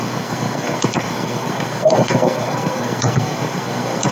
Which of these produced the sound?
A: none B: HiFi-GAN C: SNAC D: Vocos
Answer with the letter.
C